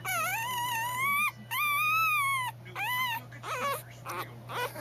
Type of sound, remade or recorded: recorded